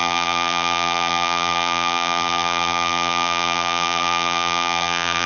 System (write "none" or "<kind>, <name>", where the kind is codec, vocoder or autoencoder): vocoder, BigVGAN v2